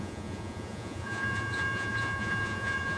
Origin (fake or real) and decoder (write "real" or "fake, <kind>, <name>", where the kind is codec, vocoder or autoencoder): fake, vocoder, Vocos